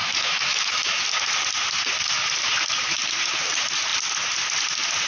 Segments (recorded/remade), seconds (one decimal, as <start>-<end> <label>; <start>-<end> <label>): 0.0-1.0 remade; 1.0-5.1 recorded